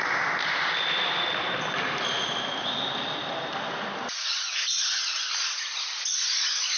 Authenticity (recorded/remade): recorded